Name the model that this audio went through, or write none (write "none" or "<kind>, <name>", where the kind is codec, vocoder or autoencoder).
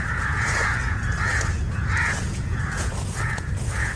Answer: vocoder, Vocos